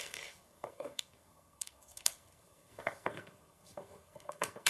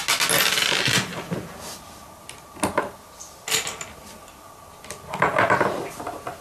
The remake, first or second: first